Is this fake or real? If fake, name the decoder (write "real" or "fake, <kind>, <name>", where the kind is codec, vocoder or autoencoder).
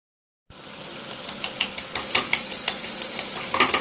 real